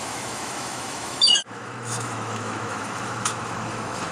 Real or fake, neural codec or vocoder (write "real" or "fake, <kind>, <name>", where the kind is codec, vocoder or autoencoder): fake, autoencoder, DAC-VAE